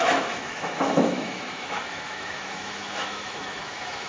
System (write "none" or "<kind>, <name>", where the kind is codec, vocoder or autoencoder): autoencoder, DAC-VAE